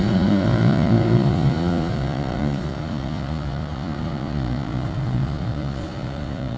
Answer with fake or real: fake